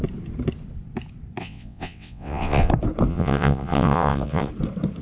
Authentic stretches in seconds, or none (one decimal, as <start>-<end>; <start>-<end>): 0.0-1.4; 2.7-3.1; 4.5-5.0